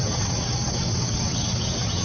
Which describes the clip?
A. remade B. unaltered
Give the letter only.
A